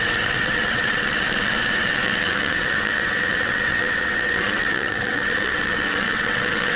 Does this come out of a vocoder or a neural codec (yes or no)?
yes